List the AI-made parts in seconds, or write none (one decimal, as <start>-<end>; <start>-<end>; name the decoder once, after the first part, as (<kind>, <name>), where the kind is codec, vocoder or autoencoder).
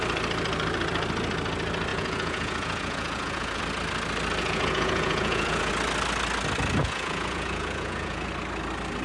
1.9-3.6 (vocoder, Vocos); 4.4-5.7; 6.8-8.3